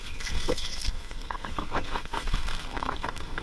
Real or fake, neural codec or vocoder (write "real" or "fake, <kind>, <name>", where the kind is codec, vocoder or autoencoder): fake, codec, SNAC